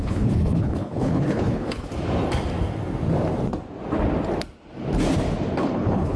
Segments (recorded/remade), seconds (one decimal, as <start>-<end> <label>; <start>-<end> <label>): 0.0-1.9 remade; 1.9-5.6 recorded; 5.6-6.2 remade